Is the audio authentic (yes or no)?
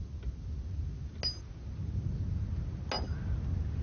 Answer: yes